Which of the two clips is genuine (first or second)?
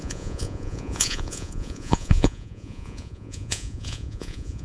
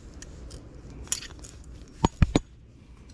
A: second